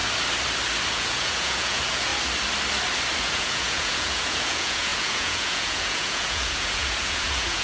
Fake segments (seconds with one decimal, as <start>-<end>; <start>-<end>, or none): 0.9-2.1; 3.2-7.6